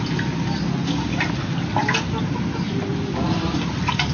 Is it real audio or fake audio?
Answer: real